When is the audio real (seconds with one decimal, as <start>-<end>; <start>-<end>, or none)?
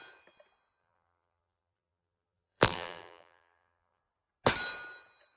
0.0-0.8; 4.0-5.4